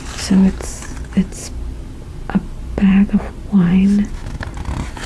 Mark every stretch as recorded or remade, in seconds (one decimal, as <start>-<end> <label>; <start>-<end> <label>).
0.0-5.1 recorded